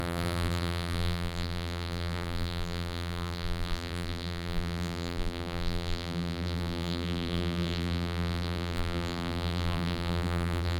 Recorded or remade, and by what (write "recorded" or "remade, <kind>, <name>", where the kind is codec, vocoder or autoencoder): remade, vocoder, BigVGAN v2